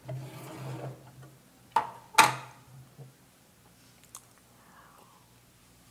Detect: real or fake real